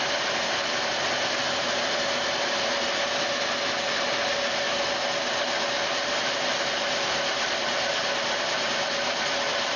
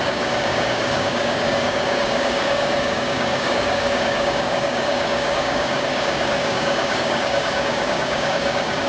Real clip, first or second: first